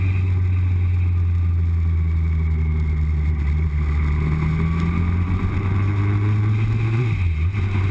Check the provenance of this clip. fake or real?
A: real